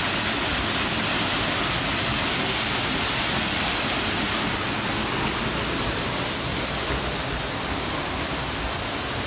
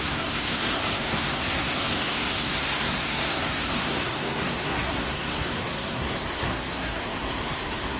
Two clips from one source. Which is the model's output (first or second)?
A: second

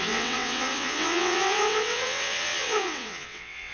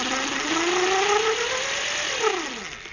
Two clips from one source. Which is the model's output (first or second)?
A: first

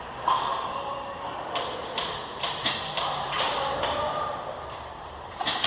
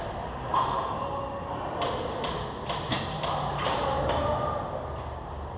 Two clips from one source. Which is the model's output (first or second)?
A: first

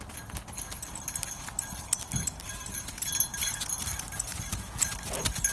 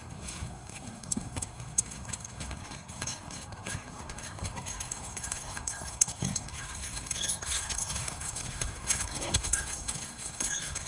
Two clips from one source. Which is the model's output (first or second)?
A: second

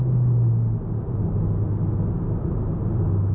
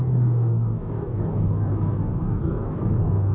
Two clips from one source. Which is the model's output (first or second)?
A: second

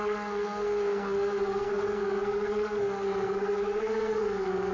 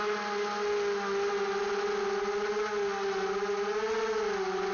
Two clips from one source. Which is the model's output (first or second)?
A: first